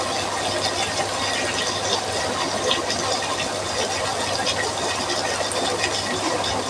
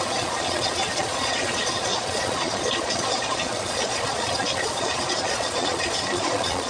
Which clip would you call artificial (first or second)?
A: second